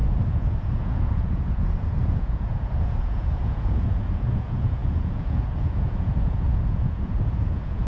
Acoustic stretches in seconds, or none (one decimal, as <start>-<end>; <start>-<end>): none